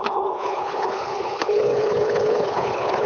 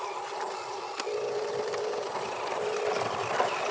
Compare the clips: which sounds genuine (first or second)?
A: second